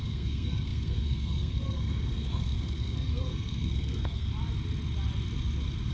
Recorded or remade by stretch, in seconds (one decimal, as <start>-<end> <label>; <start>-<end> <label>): 0.0-4.3 remade; 4.3-5.9 recorded